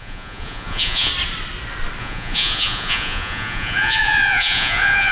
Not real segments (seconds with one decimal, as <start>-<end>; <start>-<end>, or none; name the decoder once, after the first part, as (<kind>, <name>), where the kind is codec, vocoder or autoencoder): 0.0-1.1 (vocoder, Vocos); 2.0-5.1